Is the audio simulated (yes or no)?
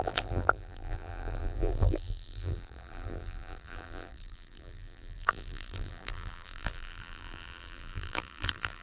yes